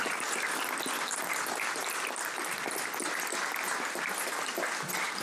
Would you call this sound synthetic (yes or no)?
no